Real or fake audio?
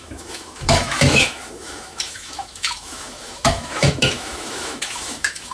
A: fake